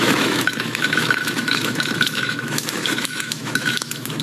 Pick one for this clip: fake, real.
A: fake